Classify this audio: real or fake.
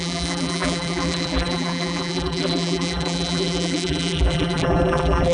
fake